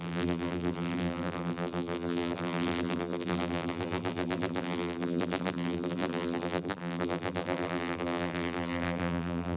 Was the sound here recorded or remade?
remade